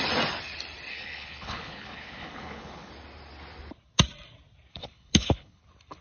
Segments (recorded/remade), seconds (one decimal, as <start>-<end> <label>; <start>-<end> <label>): 0.0-0.9 recorded; 0.9-2.9 remade; 2.9-4.7 recorded; 4.7-5.6 remade; 5.6-6.0 recorded